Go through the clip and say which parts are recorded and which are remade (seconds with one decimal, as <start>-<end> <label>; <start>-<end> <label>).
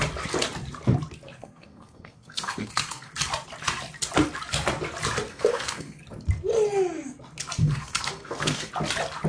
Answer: 0.0-1.4 recorded; 1.4-3.1 remade; 3.1-5.3 recorded; 5.3-6.0 remade; 6.0-7.6 recorded; 7.6-8.7 remade; 8.7-9.3 recorded